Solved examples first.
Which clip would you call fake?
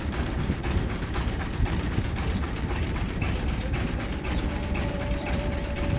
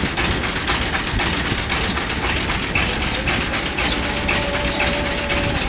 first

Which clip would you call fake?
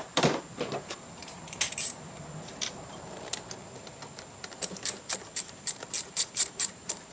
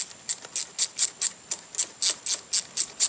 first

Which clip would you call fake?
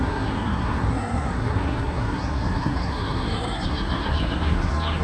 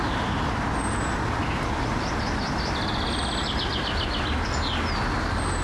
first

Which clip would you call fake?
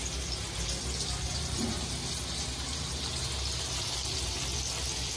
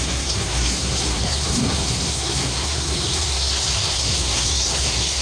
second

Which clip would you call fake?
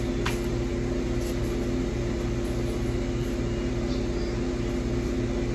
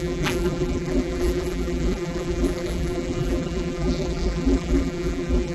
second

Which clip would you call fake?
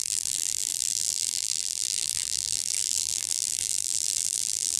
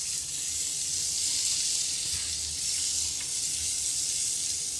first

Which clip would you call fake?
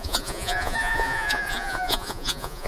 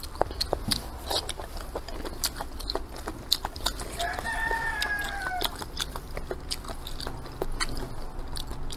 first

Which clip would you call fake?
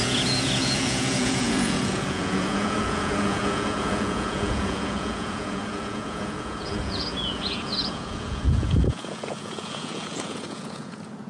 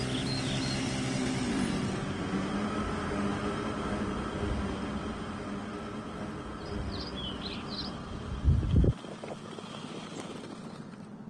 first